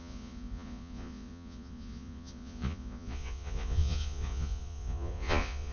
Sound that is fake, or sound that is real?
fake